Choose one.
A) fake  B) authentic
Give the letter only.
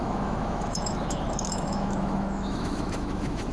A